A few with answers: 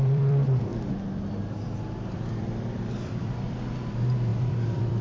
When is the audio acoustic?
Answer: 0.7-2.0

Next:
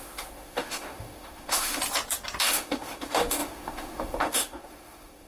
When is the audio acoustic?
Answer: 1.8-2.4

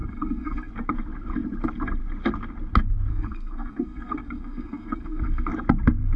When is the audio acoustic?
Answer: 0.7-3.1; 5.5-6.2

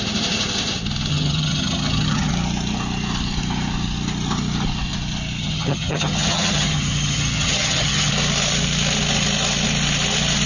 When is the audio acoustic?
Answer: 0.0-1.1; 2.3-5.4; 8.1-10.5

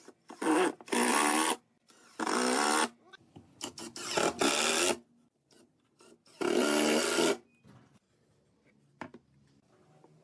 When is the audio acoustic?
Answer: 0.0-10.2

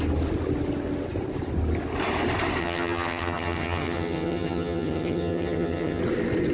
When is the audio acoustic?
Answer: 0.0-2.6; 6.0-6.5

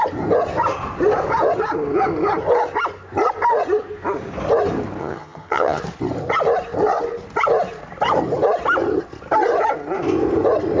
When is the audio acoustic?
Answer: 0.0-5.0; 5.8-10.8